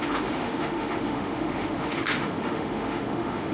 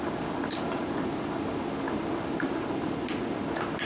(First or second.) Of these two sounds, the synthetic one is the first